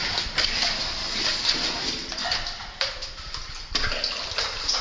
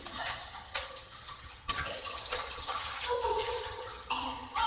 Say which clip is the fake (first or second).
second